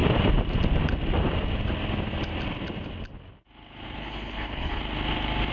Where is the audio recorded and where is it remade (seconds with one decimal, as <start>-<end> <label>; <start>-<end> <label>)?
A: 0.0-4.0 recorded; 4.0-4.8 remade; 4.8-5.5 recorded